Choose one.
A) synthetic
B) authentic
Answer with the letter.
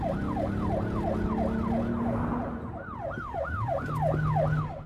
B